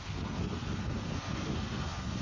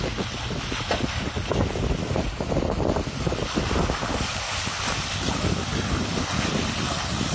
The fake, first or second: first